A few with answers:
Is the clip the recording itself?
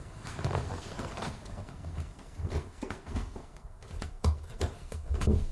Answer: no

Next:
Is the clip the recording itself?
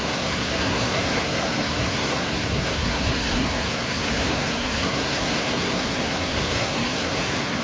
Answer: no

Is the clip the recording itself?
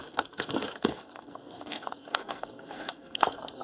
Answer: no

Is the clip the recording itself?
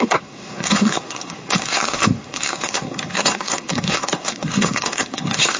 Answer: no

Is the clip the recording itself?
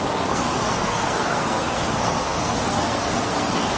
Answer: no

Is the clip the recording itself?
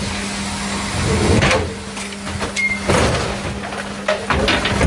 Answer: yes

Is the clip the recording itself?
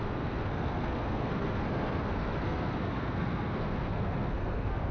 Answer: no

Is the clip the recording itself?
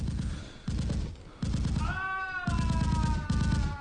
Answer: yes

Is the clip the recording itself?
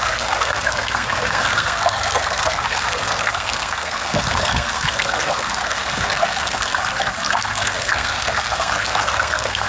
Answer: no